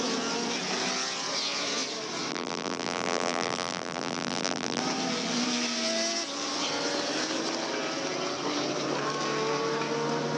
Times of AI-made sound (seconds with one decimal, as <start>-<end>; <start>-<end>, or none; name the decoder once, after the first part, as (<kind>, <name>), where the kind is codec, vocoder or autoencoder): 2.3-4.8 (vocoder, BigVGAN v2)